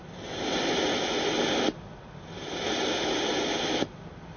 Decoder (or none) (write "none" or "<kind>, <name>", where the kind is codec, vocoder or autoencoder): none